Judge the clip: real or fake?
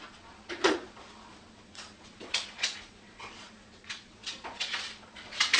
fake